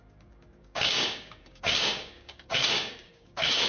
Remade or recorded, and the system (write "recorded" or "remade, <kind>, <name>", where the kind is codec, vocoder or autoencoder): remade, codec, DAC